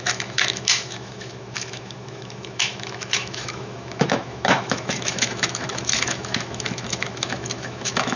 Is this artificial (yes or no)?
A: yes